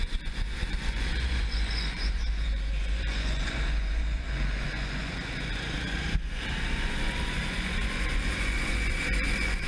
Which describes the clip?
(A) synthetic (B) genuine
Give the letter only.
A